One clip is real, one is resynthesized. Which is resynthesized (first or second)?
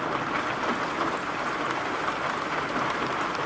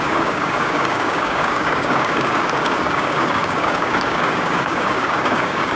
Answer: second